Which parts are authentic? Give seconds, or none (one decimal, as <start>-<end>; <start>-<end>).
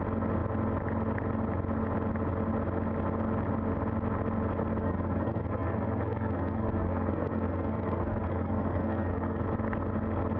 0.0-4.8; 9.4-10.4